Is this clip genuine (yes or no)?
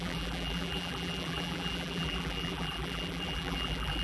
no